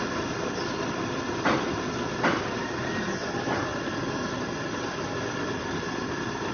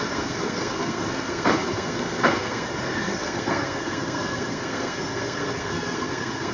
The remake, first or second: second